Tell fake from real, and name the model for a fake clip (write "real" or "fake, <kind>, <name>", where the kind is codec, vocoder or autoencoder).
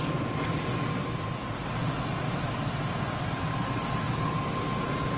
real